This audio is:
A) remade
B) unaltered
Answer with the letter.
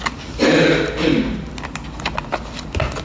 A